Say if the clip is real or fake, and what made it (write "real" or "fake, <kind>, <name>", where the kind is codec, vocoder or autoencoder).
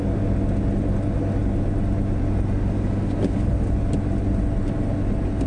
real